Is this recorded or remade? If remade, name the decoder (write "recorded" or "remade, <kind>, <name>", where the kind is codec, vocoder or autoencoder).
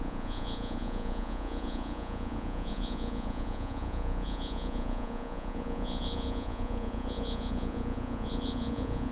remade, vocoder, Vocos